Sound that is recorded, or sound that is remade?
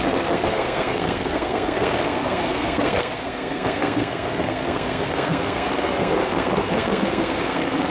remade